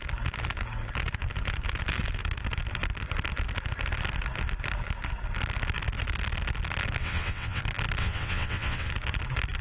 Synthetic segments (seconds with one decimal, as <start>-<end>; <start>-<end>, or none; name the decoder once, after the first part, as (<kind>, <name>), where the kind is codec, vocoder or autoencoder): 7.0-7.6 (vocoder, WaveNeXt); 8.0-8.9